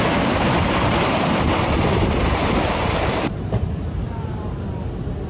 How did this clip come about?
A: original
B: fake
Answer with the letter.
B